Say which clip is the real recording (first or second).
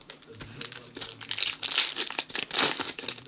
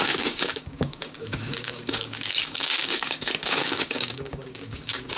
first